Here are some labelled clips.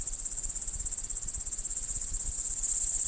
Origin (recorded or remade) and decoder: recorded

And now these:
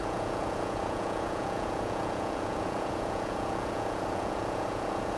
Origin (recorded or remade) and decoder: remade, vocoder, Vocos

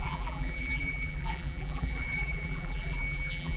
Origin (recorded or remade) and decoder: remade, vocoder, BigVGAN v2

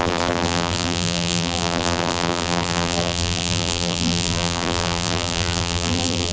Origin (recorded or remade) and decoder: remade, vocoder, BigVGAN v2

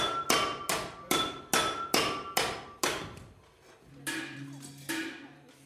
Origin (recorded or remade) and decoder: recorded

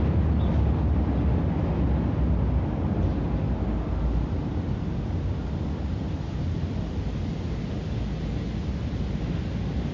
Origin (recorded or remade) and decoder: recorded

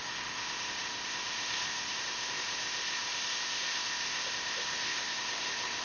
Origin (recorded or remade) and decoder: remade, codec, ZipCodec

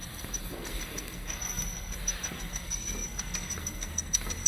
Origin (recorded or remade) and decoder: remade, codec, SNAC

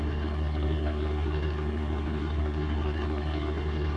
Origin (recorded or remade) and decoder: remade, codec, SNAC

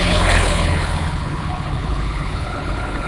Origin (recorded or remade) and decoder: remade, codec, HILCodec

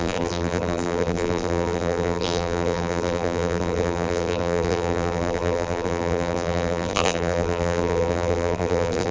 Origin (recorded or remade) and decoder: remade, vocoder, BigVGAN v2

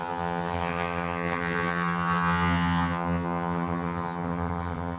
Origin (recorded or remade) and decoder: remade, vocoder, HiFi-GAN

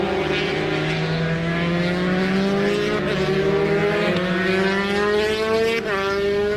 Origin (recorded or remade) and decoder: recorded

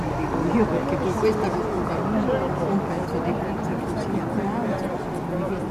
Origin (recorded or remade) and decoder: recorded